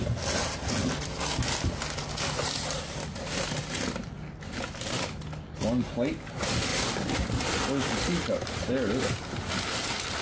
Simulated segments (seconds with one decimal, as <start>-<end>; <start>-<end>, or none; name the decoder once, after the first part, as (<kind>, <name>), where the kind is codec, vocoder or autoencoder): none